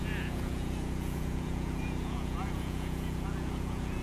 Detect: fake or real fake